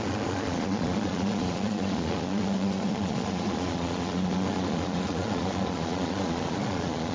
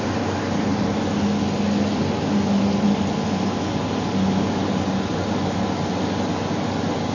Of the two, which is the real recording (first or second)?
second